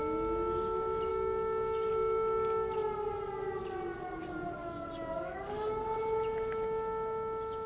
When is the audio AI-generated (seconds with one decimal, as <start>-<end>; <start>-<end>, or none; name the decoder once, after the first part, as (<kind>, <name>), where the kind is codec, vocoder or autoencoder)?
1.1-1.9 (codec, DAC); 4.6-5.8